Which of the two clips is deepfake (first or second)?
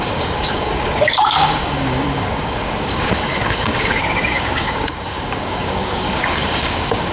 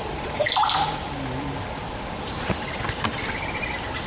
first